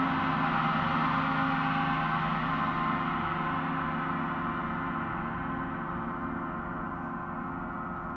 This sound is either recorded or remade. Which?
recorded